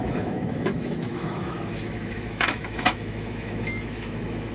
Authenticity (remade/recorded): remade